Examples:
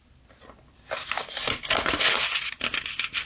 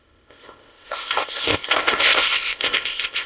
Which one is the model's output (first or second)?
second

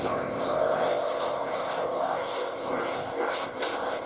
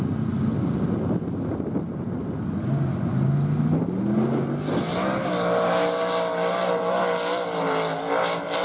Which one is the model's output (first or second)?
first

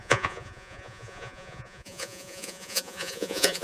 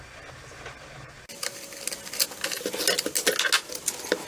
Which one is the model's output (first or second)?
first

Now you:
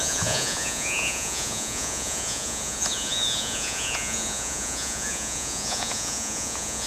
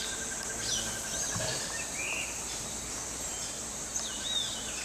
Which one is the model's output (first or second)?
first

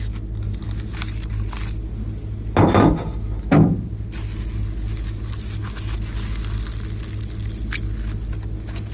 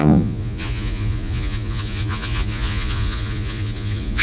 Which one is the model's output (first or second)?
second